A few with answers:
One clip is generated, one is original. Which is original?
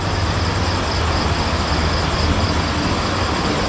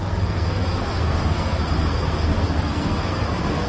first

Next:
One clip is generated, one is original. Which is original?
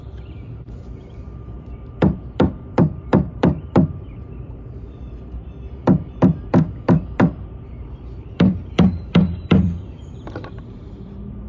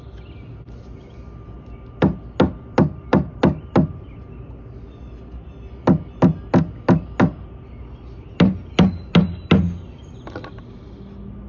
second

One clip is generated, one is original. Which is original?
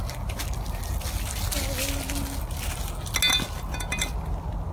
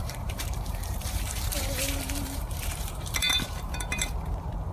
first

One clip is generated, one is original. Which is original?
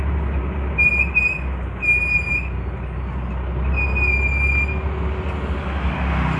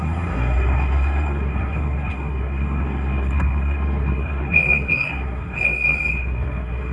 first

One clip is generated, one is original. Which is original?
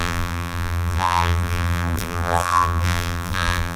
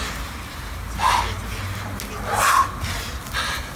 second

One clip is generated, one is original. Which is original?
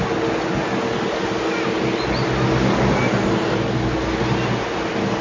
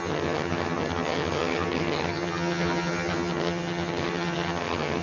first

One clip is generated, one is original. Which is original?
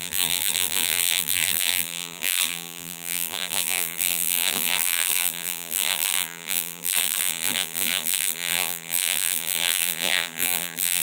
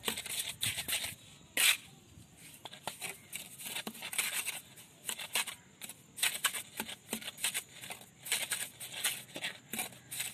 second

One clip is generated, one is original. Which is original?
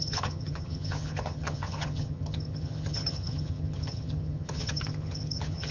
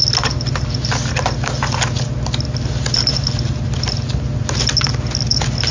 second